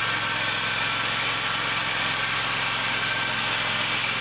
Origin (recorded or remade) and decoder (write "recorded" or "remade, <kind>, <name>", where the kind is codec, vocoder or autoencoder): recorded